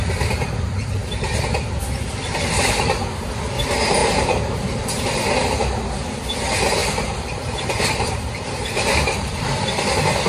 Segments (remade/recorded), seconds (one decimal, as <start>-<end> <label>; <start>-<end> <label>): 0.0-4.0 recorded; 4.0-5.0 remade; 5.0-6.8 recorded; 6.8-9.8 remade; 9.8-10.3 recorded